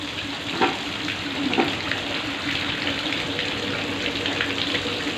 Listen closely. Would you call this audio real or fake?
real